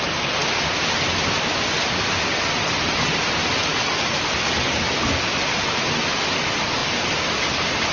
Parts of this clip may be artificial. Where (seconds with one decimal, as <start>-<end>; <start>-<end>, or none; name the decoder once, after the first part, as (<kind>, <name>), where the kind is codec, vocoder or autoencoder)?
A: none